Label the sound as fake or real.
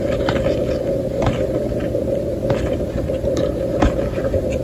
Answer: fake